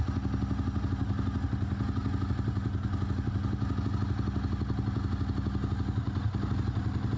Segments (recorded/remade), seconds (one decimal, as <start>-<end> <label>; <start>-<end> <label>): 0.0-7.2 recorded